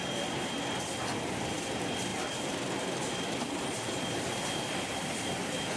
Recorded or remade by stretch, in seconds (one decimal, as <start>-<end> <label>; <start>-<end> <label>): 0.0-5.8 recorded